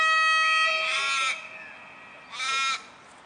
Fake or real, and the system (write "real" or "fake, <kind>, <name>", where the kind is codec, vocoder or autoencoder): real